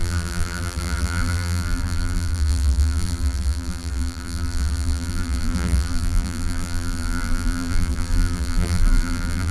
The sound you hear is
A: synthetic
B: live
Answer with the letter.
A